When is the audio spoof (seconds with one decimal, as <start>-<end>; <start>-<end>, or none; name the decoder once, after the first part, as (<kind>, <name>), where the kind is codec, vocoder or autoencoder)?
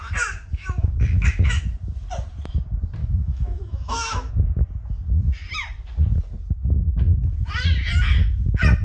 0.5-1.6 (autoencoder, DAC-VAE); 3.0-4.3